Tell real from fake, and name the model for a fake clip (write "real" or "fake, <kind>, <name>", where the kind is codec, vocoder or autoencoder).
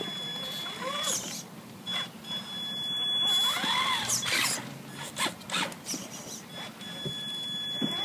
real